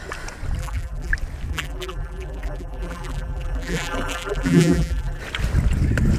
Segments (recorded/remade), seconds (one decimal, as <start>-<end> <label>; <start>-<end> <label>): 0.0-0.6 recorded; 0.6-1.1 remade; 1.1-1.5 recorded; 1.5-5.2 remade; 5.2-6.2 recorded